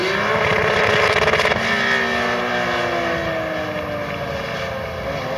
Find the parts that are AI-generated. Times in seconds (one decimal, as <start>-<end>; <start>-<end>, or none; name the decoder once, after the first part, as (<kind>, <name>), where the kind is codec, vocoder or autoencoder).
none